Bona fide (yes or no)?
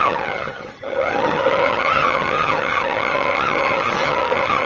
no